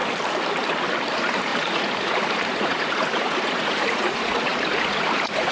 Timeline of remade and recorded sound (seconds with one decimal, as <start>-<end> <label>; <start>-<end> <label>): 0.0-1.1 recorded; 1.1-5.5 remade